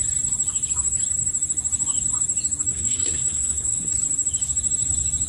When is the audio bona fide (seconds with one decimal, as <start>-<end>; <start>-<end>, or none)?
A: 0.0-2.7; 3.9-5.3